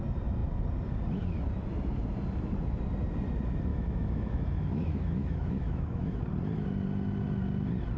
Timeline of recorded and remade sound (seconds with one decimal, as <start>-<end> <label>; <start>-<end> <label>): 0.0-3.7 recorded; 3.7-6.2 remade; 6.2-8.0 recorded